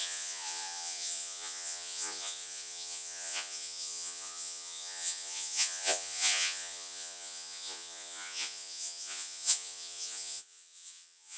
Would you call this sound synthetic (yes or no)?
yes